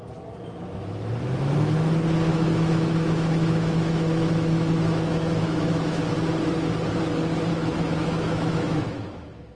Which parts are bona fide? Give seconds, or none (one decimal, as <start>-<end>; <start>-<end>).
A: 0.0-2.3; 6.0-7.5